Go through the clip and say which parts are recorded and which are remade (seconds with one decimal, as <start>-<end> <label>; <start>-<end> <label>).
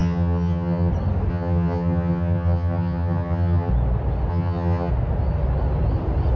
0.0-0.9 remade; 0.9-1.3 recorded; 1.3-3.7 remade; 3.7-4.3 recorded; 4.3-4.9 remade; 4.9-6.4 recorded